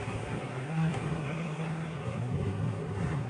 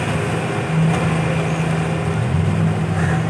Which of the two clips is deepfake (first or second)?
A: first